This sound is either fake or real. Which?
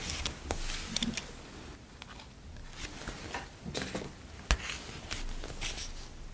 real